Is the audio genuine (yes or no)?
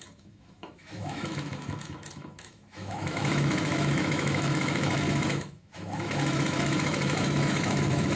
no